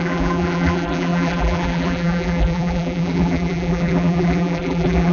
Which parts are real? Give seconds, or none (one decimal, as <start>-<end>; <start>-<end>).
none